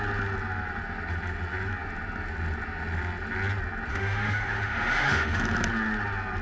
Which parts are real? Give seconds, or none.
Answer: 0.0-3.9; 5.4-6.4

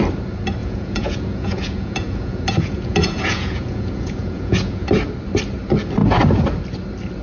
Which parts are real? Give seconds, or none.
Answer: 0.0-0.6; 4.9-7.2

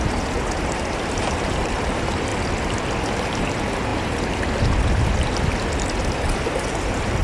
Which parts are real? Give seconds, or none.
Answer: 2.3-3.4